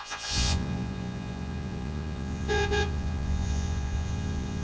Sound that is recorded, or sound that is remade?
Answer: remade